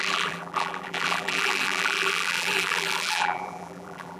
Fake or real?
fake